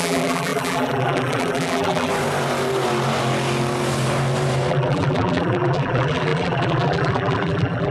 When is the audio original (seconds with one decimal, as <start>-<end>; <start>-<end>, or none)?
2.1-4.7